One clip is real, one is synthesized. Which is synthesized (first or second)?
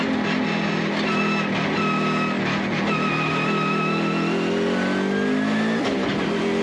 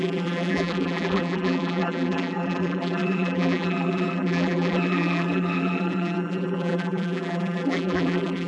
second